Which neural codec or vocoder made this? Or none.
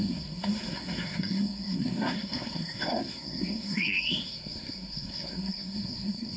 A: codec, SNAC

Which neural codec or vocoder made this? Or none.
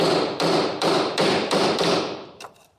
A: vocoder, BigVGAN v2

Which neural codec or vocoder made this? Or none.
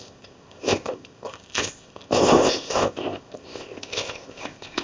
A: codec, ZipCodec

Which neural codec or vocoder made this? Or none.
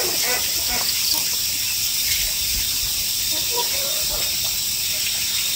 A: vocoder, BigVGAN v2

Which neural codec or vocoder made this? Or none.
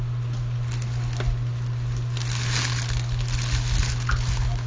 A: none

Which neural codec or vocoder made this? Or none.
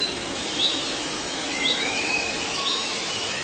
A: autoencoder, DAC-VAE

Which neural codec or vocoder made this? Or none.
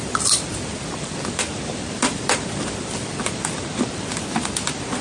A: vocoder, BigVGAN v2